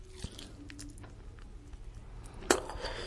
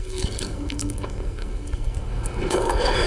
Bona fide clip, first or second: first